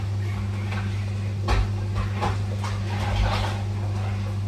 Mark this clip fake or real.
real